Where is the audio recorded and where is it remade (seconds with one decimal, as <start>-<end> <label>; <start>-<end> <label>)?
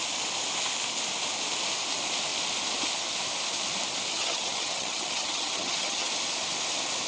0.0-4.1 recorded; 4.1-6.1 remade; 6.1-7.1 recorded